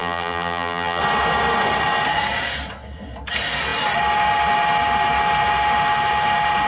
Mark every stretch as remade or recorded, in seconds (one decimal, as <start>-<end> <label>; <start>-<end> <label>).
0.0-1.0 remade; 1.0-6.7 recorded